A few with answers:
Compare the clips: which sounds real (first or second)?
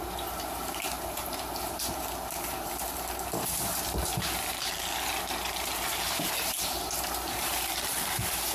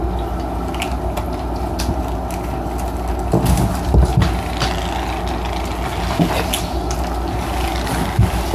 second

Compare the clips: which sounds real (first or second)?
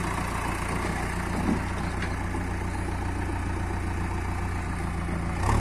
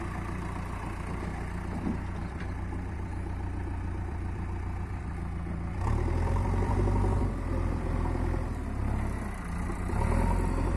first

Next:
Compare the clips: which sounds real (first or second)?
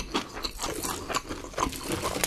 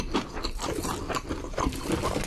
first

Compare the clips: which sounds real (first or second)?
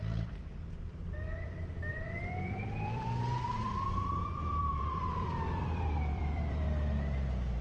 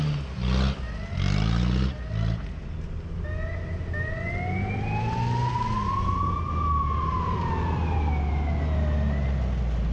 second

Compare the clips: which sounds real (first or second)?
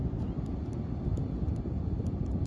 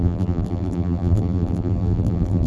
first